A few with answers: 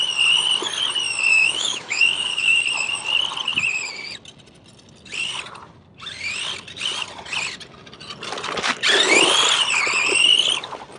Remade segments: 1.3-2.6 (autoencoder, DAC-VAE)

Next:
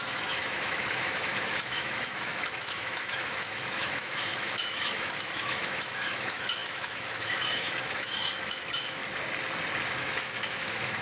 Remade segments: 0.0-9.0 (autoencoder, DAC-VAE); 9.9-11.0

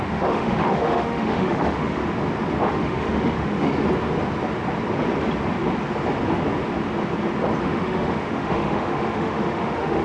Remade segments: 0.0-2.0 (autoencoder, DAC-VAE); 2.7-3.7; 7.6-10.0

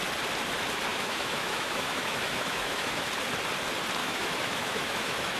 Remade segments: 0.9-3.1 (autoencoder, DAC-VAE); 4.0-5.4

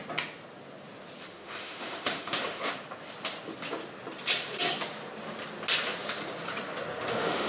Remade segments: 1.3-2.6 (autoencoder, DAC-VAE); 7.1-7.5

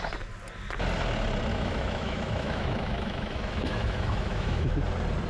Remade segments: 1.5-4.7 (autoencoder, DAC-VAE)